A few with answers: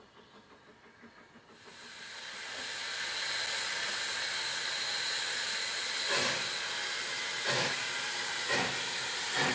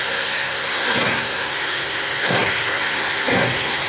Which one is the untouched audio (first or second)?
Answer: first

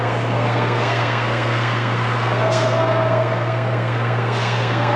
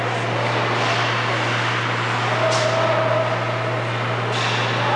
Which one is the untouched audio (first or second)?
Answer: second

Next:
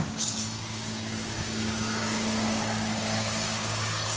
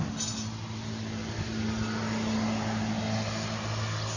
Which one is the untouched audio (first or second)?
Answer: second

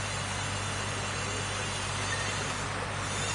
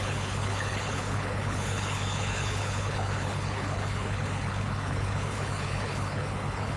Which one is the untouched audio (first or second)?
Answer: first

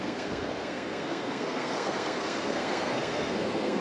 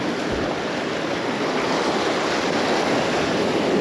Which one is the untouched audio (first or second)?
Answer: second